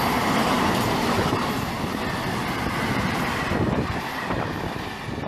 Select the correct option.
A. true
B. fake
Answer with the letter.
A